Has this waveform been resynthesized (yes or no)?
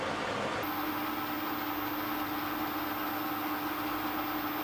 no